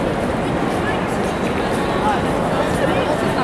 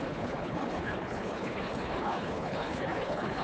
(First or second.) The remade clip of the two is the second